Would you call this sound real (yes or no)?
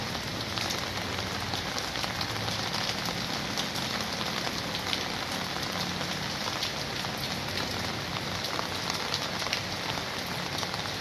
yes